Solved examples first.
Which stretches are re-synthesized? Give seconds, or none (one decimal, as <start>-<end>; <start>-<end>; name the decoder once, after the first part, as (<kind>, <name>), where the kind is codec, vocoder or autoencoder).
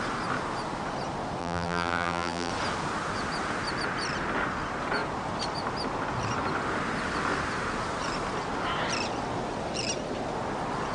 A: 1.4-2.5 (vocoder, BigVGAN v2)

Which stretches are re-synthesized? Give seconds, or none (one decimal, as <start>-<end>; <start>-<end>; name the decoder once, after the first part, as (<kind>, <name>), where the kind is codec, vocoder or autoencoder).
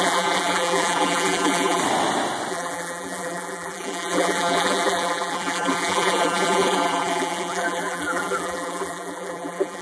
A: 0.0-1.8 (vocoder, BigVGAN v2); 2.5-9.8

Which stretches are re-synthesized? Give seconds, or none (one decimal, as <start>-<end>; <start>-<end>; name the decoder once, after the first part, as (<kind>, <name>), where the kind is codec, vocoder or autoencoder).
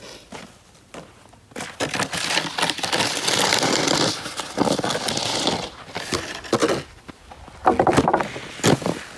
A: none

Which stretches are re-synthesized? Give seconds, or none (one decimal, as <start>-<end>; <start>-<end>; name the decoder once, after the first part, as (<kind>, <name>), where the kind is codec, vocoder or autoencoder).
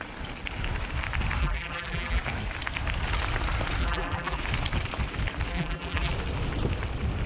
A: 1.4-2.2 (vocoder, BigVGAN v2); 3.8-4.4; 5.5-6.1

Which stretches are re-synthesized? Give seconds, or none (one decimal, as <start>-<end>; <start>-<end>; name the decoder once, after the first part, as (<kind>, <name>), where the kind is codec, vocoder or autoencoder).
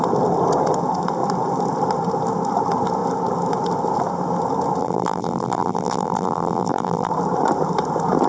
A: 4.8-7.1 (vocoder, BigVGAN v2)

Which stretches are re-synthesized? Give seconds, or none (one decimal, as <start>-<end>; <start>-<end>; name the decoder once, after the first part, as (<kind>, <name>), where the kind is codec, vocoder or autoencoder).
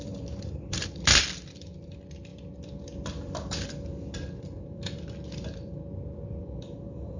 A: 0.0-7.2 (vocoder, BigVGAN v2)